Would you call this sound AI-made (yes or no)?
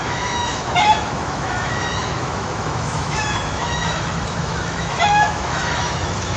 yes